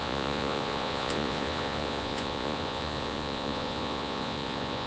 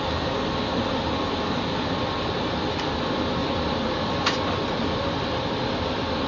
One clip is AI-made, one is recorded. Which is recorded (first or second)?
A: second